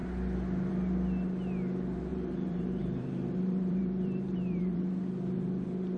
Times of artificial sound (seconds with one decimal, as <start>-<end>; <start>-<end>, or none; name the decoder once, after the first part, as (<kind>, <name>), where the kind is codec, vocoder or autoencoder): 2.1-4.8 (vocoder, BigVGAN v2)